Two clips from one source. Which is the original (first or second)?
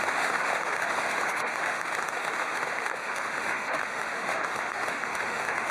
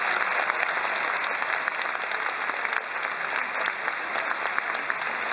second